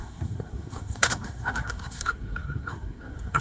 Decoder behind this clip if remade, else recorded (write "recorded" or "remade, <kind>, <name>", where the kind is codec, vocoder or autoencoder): remade, codec, SNAC